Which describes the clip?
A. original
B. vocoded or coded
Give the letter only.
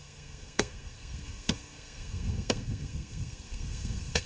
B